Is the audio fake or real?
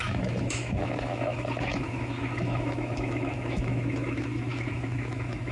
fake